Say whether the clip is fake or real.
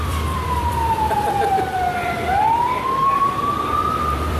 fake